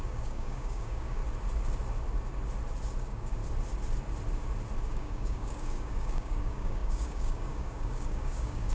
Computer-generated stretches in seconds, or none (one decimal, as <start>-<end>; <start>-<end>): 0.0-1.2; 3.0-3.4; 4.8-8.7